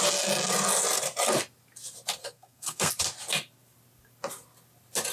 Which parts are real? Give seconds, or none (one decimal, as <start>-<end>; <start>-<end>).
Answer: 0.0-2.2; 2.9-5.1

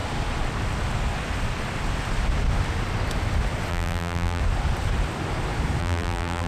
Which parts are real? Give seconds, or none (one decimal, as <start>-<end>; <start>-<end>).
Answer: 0.0-3.7; 4.4-5.8

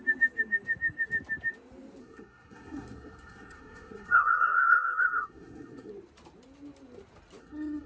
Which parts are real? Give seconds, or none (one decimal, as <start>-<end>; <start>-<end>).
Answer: 0.0-2.0; 5.9-7.4

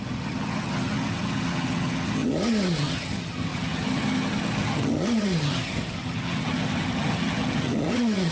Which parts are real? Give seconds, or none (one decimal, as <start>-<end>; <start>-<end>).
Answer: none

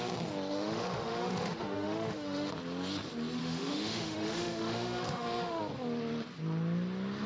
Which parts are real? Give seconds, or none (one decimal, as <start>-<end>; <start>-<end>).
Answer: 0.0-0.5; 2.5-3.4; 5.6-7.3

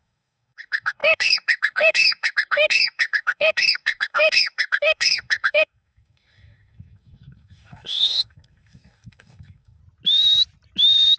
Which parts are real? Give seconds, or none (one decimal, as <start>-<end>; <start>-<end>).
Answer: 9.8-11.2

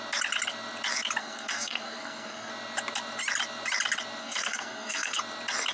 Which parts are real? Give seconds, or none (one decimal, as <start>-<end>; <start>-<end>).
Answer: 0.0-1.2; 2.5-4.2; 5.2-5.7

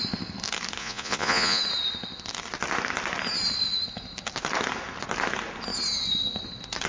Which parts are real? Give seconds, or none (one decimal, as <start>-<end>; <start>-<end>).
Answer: 0.0-0.8; 1.6-6.9